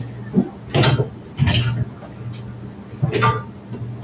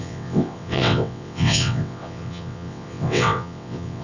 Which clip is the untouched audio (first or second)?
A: first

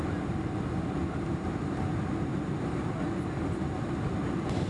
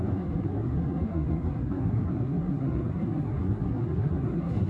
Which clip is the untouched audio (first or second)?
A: first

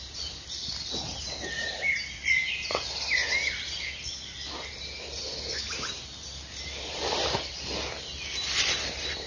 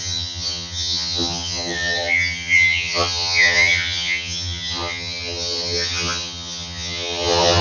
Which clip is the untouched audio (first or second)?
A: first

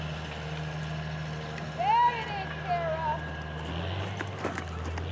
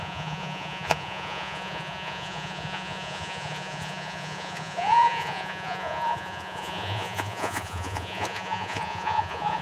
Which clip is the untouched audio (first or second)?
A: first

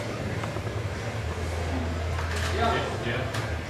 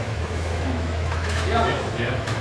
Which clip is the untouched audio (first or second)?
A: first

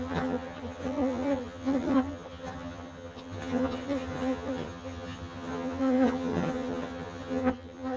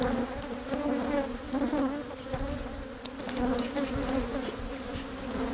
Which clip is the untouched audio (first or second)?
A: second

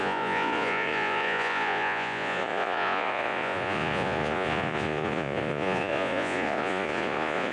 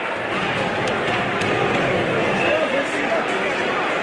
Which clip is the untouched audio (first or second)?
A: second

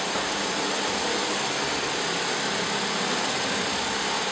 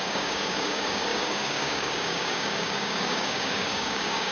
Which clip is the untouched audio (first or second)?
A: first